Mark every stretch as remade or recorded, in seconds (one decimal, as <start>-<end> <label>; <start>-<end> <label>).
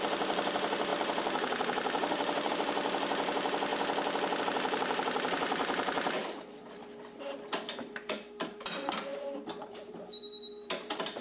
0.0-3.7 remade; 3.7-4.4 recorded; 4.4-11.2 remade